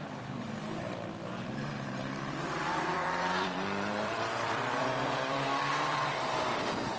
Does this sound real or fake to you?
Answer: fake